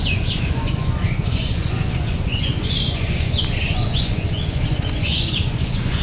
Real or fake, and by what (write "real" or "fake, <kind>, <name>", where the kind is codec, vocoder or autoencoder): fake, vocoder, Vocos